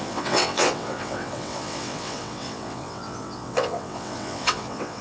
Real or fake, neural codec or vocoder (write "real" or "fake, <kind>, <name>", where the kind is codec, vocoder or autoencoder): fake, vocoder, WaveNeXt